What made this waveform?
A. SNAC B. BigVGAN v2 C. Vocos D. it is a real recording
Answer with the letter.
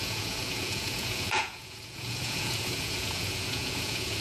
C